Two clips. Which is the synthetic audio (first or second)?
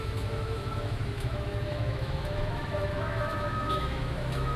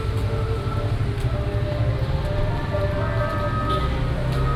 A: first